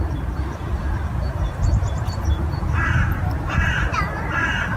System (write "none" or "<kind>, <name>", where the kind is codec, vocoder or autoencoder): vocoder, BigVGAN v2